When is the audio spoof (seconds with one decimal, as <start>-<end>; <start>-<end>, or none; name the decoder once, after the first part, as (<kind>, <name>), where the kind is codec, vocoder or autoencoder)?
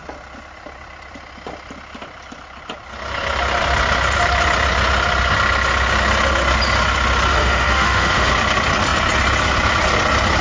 7.3-8.3 (autoencoder, DAC-VAE)